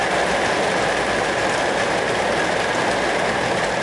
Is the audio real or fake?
real